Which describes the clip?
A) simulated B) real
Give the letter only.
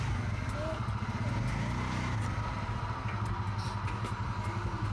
B